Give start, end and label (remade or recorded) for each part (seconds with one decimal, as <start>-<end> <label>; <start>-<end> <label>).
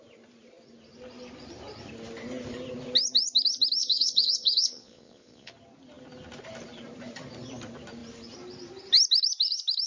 0.0-3.8 recorded; 3.8-5.5 remade; 5.5-9.9 recorded